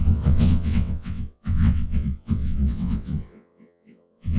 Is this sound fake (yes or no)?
yes